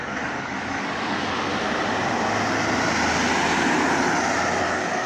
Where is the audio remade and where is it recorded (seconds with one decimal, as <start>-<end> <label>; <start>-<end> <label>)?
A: 0.0-1.5 remade; 1.5-4.6 recorded; 4.6-5.1 remade

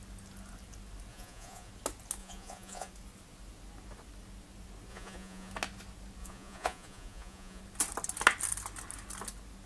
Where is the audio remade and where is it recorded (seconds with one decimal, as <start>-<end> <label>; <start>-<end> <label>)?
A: 0.0-1.1 recorded; 1.1-1.7 remade; 1.7-2.2 recorded; 2.2-2.9 remade; 2.9-4.9 recorded; 4.9-5.5 remade; 5.5-6.2 recorded; 6.2-7.6 remade; 7.6-9.7 recorded

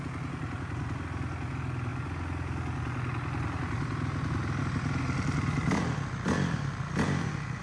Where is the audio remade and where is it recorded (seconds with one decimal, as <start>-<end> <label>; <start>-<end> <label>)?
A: 0.0-7.6 recorded

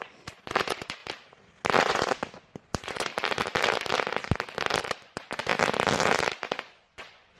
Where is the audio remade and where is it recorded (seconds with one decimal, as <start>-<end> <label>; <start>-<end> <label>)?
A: 0.0-1.0 remade; 1.0-1.8 recorded; 1.8-3.1 remade; 3.1-4.8 recorded; 4.8-5.5 remade; 5.5-6.5 recorded; 6.5-7.4 remade